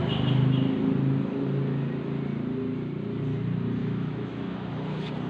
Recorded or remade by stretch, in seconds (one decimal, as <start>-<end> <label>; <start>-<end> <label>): 0.0-3.8 recorded; 3.8-4.7 remade; 4.7-5.3 recorded